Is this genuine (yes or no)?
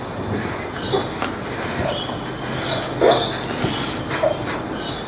yes